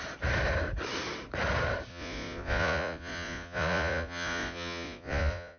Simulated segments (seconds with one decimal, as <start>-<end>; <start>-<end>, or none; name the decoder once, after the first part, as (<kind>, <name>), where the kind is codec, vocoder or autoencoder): 1.9-5.6 (vocoder, Vocos)